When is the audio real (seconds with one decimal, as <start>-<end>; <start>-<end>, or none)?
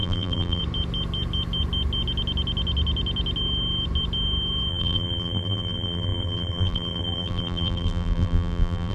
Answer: 0.6-4.7